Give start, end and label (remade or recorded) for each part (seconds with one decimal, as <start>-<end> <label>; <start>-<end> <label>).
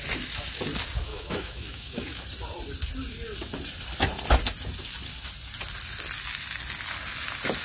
0.0-1.1 recorded; 1.1-2.2 remade; 2.2-7.6 recorded